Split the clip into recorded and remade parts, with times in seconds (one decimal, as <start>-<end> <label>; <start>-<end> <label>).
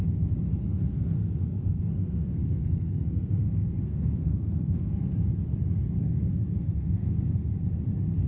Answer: 0.0-0.8 recorded; 0.8-5.1 remade; 5.1-6.0 recorded; 6.0-7.1 remade; 7.1-8.3 recorded